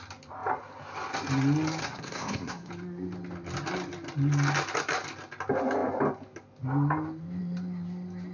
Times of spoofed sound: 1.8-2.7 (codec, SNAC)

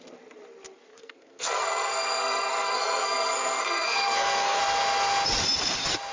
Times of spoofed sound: 0.9-4.6 (codec, SNAC)

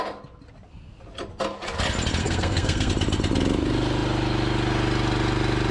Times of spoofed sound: 2.2-2.9 (codec, SNAC)

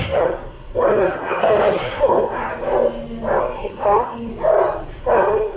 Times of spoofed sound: 0.0-2.5 (codec, SNAC); 3.4-4.3; 5.0-5.6

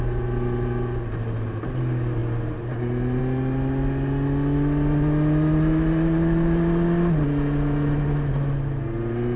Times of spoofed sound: none

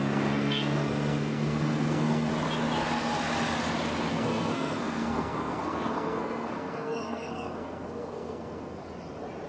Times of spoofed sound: 0.0-2.3 (codec, SNAC); 4.1-8.8